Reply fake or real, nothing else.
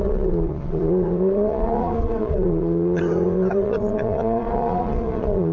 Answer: fake